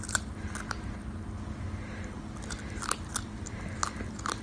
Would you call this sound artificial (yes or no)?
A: no